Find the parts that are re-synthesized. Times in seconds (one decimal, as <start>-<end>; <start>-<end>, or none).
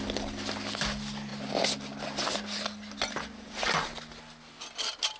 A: none